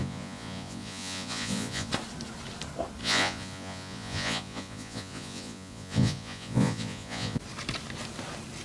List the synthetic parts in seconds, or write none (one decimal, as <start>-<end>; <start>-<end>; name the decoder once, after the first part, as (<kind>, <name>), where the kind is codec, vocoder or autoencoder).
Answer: 0.0-1.9 (vocoder, Vocos); 3.0-7.4